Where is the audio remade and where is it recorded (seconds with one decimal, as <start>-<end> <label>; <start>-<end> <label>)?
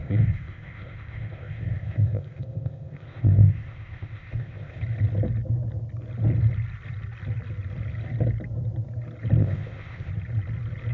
0.0-4.8 remade; 4.8-9.4 recorded; 9.4-10.1 remade; 10.1-10.9 recorded